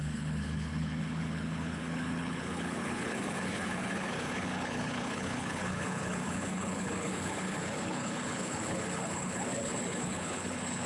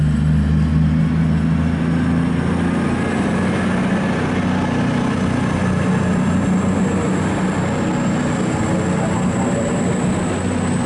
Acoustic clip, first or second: second